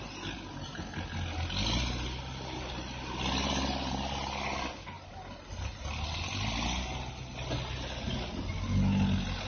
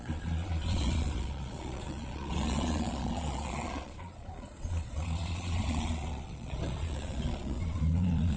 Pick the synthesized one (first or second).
second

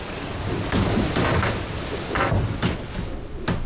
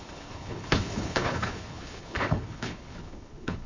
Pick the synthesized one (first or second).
second